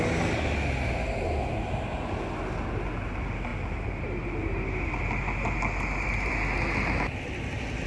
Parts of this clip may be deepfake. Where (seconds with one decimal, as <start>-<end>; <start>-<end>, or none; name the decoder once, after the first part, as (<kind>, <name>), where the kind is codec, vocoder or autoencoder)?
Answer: none